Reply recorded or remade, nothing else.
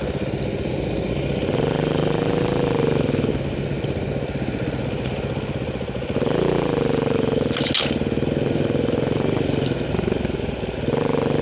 recorded